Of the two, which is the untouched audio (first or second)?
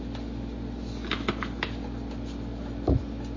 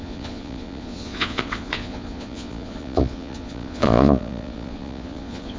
first